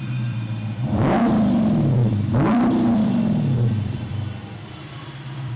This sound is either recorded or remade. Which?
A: remade